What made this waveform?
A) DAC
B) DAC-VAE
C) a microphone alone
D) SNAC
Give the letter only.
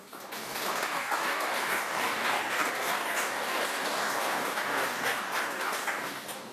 A